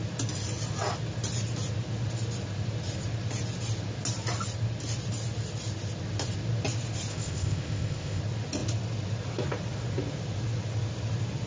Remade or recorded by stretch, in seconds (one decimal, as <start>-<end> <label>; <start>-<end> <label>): 0.0-7.1 recorded; 7.1-8.2 remade; 8.2-11.5 recorded